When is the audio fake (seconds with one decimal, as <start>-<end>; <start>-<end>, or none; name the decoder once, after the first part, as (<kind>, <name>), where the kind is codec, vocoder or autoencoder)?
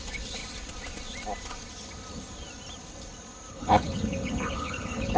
0.0-0.4 (codec, HILCodec); 3.5-5.2